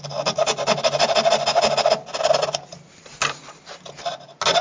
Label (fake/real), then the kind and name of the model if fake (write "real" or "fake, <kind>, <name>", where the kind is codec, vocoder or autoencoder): real